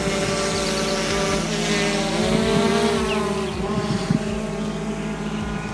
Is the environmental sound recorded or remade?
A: recorded